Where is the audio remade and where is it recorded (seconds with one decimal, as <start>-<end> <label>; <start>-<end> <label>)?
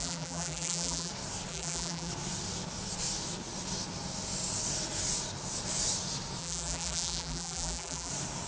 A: 0.0-1.1 remade; 1.1-1.5 recorded; 1.5-2.1 remade; 2.1-6.4 recorded; 6.4-8.1 remade; 8.1-8.5 recorded